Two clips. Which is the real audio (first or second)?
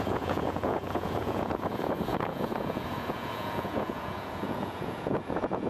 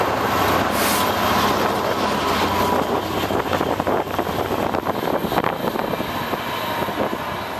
second